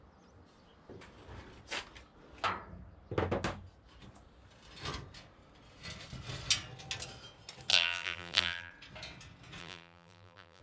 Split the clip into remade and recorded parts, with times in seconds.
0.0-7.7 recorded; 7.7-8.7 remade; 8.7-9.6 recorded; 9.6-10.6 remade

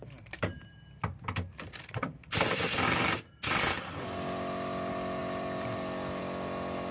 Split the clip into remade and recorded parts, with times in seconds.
0.0-2.6 remade; 2.6-5.2 recorded; 5.2-6.2 remade; 6.2-6.9 recorded

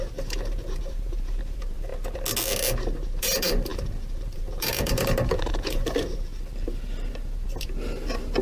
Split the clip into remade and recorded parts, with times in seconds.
0.0-1.9 remade; 1.9-3.2 recorded; 3.2-6.3 remade; 6.3-8.4 recorded

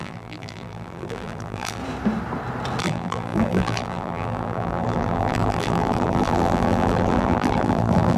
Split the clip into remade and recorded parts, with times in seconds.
0.0-1.8 remade; 1.8-2.8 recorded; 2.8-8.2 remade

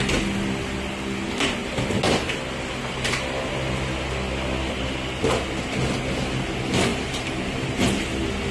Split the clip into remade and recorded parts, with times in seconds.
0.0-6.9 recorded; 6.9-7.5 remade; 7.5-8.5 recorded

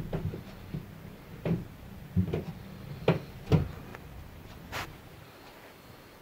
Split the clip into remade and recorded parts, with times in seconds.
0.0-1.3 recorded; 1.3-1.9 remade; 1.9-3.9 recorded; 3.9-5.4 remade; 5.4-6.2 recorded